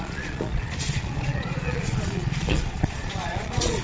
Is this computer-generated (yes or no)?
yes